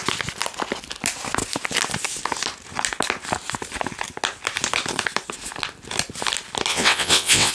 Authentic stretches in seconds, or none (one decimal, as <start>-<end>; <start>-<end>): 0.0-6.7